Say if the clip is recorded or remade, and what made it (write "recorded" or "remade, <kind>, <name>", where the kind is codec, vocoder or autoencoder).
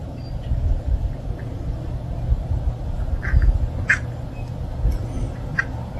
recorded